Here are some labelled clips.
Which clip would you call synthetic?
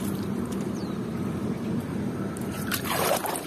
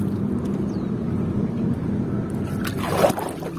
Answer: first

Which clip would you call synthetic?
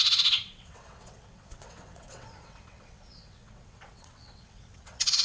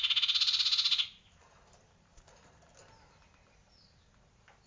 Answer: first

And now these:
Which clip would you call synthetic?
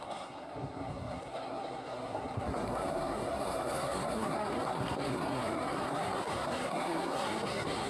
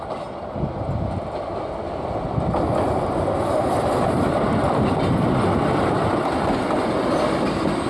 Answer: first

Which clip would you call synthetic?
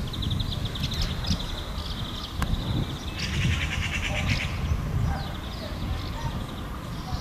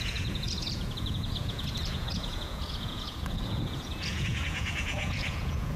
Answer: second